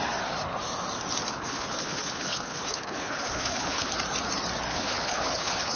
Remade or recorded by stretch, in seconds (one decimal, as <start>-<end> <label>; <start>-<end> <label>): 0.0-1.3 recorded; 1.3-3.9 remade; 3.9-4.7 recorded; 4.7-5.8 remade